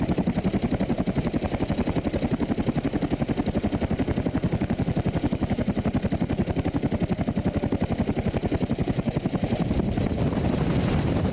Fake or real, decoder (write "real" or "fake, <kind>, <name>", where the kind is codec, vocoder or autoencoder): real